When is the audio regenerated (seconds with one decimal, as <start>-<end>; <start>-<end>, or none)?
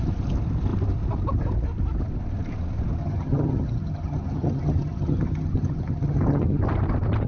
3.0-6.6